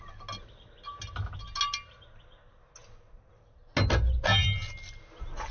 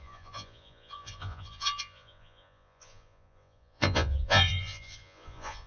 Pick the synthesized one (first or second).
second